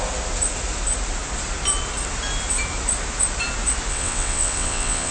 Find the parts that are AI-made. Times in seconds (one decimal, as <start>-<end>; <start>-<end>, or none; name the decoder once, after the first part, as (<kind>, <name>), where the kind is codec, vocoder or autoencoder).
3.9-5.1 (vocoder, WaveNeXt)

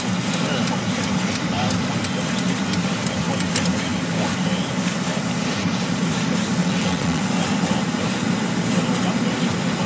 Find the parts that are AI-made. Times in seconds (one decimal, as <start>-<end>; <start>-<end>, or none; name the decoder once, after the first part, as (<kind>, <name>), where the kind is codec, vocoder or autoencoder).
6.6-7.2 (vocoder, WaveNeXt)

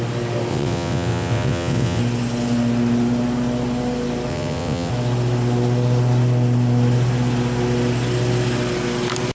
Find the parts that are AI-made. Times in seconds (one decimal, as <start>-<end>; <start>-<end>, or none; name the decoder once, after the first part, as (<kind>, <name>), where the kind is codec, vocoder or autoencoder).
0.5-2.0 (vocoder, WaveNeXt); 4.3-4.9

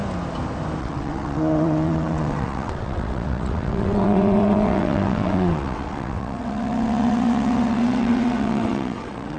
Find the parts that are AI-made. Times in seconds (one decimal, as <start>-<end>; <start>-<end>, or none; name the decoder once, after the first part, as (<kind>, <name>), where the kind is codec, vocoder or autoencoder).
0.8-9.4 (vocoder, WaveNeXt)

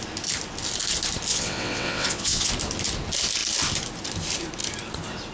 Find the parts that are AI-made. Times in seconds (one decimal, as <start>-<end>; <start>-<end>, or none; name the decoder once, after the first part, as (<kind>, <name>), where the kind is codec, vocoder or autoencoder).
1.3-2.5 (vocoder, WaveNeXt)

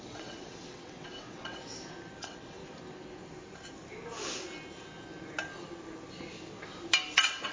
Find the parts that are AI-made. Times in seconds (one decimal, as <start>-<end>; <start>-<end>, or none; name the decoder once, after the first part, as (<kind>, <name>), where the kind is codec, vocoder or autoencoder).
0.0-1.7 (vocoder, WaveNeXt); 2.2-2.6; 7.1-7.5